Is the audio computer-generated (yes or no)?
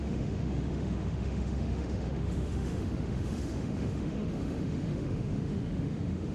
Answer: yes